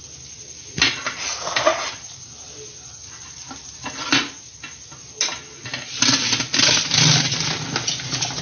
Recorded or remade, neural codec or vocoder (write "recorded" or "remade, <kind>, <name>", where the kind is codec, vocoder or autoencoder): recorded